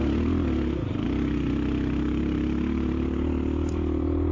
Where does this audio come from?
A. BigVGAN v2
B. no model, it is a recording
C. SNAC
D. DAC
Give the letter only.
B